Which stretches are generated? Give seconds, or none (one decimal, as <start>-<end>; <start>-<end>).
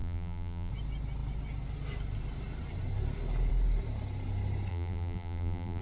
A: 0.0-0.7; 4.7-5.8